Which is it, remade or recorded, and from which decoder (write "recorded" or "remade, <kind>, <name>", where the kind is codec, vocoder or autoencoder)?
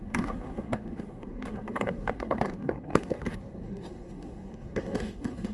remade, codec, SNAC